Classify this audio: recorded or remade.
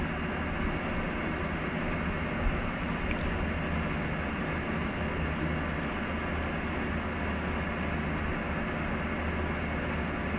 recorded